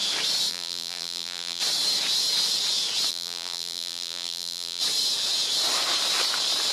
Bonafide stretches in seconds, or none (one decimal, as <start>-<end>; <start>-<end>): 0.0-0.5; 1.6-3.1; 4.8-6.7